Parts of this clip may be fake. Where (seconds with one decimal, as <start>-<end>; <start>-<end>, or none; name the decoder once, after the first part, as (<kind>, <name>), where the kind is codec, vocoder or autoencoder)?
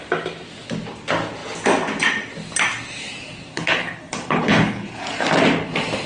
3.5-5.0 (codec, HILCodec)